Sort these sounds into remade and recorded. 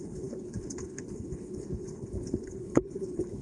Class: remade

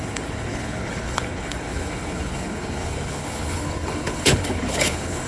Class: remade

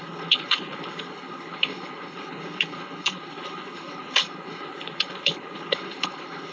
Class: remade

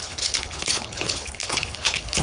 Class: remade